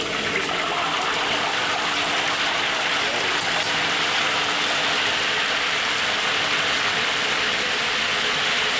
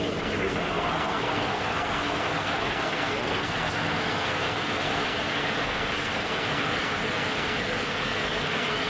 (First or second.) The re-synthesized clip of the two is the second